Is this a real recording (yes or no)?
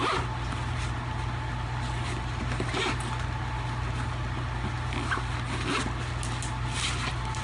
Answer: yes